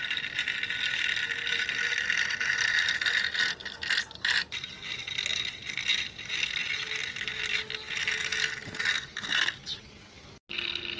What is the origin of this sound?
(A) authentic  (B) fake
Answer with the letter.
A